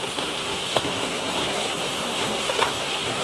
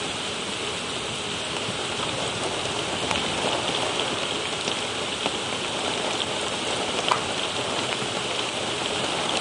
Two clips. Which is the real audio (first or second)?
second